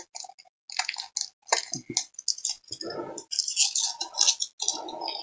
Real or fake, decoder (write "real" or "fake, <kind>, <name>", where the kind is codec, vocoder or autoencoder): real